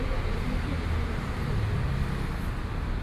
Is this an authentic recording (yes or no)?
yes